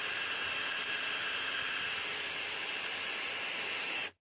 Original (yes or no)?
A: yes